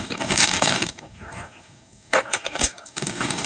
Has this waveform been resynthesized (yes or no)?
yes